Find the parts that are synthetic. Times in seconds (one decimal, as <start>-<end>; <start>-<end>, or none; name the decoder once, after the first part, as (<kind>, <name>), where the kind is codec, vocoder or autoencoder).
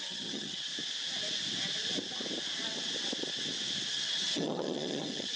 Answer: 0.0-0.7 (vocoder, HiFi-GAN); 3.9-5.4